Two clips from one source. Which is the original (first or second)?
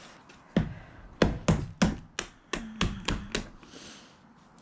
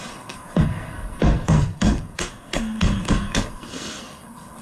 first